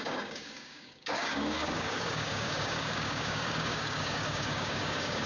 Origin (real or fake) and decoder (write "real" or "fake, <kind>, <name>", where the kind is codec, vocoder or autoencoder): fake, codec, DAC